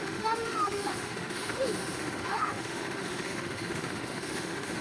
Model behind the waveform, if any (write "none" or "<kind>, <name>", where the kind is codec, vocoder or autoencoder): autoencoder, DAC-VAE